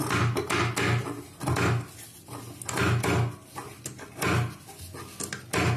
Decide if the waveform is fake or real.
real